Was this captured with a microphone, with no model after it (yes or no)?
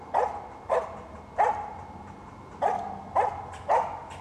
yes